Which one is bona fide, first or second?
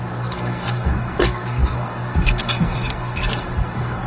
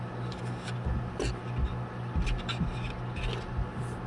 second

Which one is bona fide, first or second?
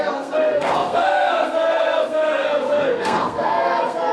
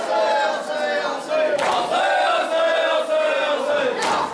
second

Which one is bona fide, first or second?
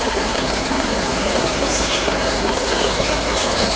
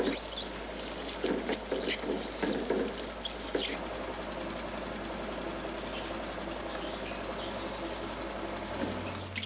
second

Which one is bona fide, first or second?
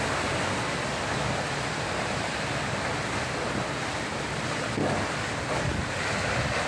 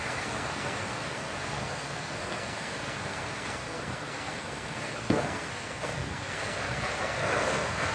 first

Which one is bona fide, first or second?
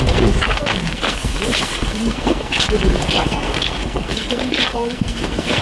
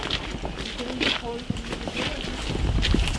second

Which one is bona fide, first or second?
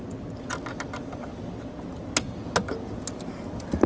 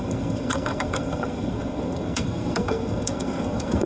first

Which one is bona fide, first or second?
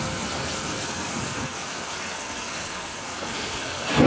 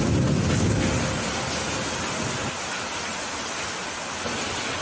second